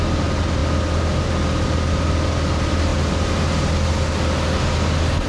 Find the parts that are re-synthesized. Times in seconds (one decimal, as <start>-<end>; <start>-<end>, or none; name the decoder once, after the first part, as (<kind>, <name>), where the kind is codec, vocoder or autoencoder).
none